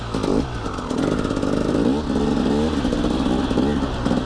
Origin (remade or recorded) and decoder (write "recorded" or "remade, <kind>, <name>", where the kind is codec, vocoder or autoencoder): recorded